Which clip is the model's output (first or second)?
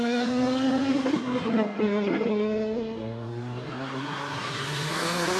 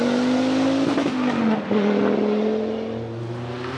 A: first